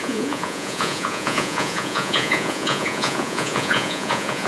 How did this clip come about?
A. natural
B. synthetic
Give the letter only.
B